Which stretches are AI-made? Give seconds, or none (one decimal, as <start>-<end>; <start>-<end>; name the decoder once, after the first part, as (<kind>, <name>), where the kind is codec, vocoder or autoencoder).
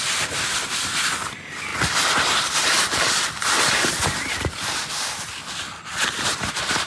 none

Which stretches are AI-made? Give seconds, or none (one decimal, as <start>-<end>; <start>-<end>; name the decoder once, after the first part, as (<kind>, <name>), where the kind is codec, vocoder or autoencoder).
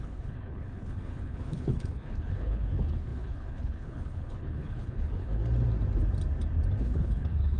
0.0-5.4 (codec, HILCodec); 6.8-7.6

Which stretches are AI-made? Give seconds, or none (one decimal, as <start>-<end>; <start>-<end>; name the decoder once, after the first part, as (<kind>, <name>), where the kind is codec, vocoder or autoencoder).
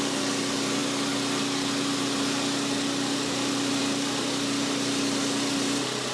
none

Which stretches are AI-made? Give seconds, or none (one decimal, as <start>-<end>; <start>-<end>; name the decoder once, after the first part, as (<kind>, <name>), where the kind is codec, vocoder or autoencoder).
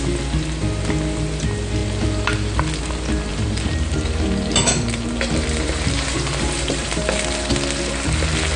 3.3-7.0 (vocoder, BigVGAN v2)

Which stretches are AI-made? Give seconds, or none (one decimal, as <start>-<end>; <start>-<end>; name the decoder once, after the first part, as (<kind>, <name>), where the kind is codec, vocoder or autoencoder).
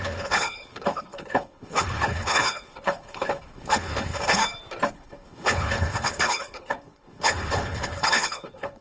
0.0-4.4 (codec, HILCodec); 4.9-8.8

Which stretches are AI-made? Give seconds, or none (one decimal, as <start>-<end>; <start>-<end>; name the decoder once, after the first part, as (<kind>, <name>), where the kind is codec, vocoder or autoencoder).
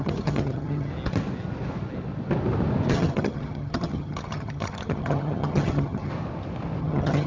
0.0-0.9 (vocoder, HiFi-GAN); 2.9-6.1; 6.8-7.3